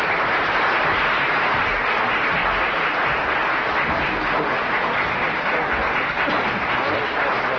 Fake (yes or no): no